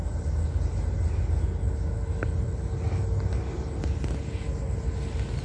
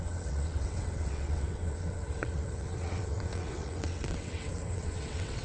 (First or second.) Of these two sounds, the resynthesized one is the second